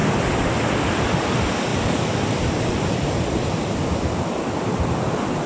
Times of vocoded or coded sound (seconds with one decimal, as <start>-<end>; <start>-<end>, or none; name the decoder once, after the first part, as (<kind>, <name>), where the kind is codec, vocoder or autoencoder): none

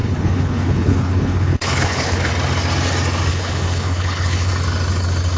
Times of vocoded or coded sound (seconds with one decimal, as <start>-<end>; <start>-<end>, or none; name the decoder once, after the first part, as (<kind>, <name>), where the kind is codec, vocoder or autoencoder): 0.0-2.3 (codec, HILCodec); 3.3-4.5

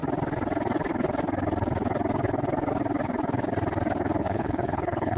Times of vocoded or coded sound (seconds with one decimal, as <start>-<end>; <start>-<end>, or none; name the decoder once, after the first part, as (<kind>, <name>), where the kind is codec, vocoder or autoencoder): 4.2-5.2 (codec, HILCodec)

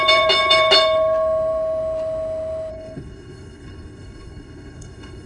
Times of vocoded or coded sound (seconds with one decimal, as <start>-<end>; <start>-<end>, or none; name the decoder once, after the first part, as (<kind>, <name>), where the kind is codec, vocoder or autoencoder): 2.7-5.3 (codec, HILCodec)

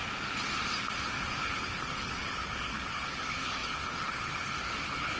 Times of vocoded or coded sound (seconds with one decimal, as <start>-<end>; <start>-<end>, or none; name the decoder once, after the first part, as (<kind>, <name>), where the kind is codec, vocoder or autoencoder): 1.4-5.2 (codec, HILCodec)

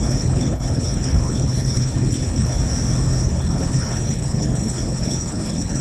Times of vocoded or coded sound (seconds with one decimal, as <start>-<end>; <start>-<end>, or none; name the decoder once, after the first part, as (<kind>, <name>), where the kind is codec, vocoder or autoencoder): 0.0-2.6 (codec, HILCodec); 3.2-5.8

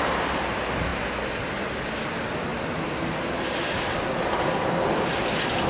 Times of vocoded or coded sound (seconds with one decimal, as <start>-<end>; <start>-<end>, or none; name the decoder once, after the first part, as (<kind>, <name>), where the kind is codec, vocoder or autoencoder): none

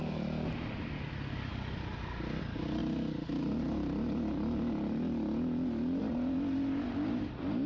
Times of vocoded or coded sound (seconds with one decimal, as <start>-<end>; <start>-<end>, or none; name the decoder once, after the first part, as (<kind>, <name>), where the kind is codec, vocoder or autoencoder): none